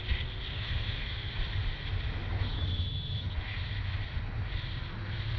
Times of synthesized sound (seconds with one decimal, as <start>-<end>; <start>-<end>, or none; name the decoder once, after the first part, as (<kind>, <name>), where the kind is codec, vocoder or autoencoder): 0.5-1.3 (codec, SNAC)